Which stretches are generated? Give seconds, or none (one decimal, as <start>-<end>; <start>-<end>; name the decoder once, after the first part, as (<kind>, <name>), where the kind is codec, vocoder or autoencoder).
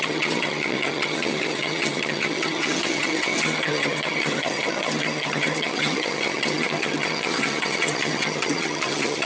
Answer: 0.0-9.3 (vocoder, HiFi-GAN)